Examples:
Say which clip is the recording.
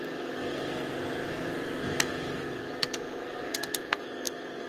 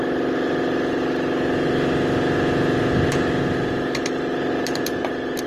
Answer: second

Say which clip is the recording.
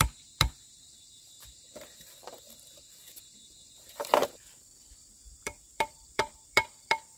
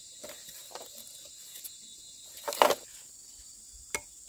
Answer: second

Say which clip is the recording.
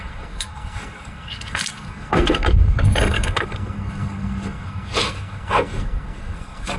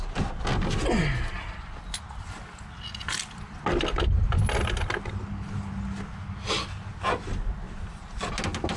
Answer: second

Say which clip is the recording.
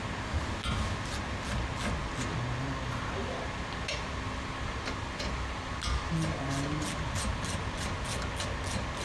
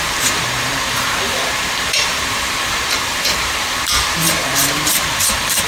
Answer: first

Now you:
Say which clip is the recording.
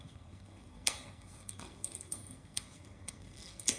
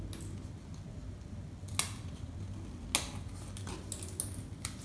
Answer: second